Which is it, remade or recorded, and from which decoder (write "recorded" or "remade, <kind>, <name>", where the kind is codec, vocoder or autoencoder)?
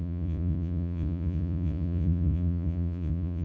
remade, vocoder, Vocos